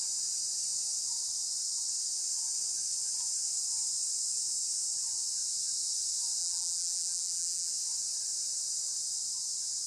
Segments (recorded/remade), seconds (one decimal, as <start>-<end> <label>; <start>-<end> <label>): 0.0-6.4 recorded; 6.4-7.7 remade; 7.7-9.9 recorded